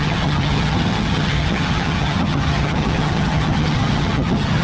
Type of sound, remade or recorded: remade